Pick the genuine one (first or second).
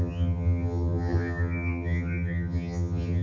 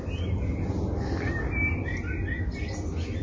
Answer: second